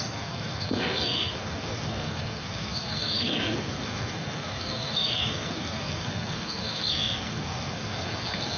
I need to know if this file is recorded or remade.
remade